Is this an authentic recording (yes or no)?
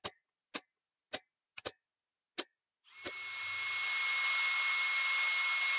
yes